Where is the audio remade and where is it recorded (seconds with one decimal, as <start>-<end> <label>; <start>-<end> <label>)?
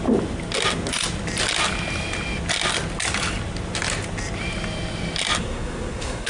0.0-5.4 recorded; 5.4-6.3 remade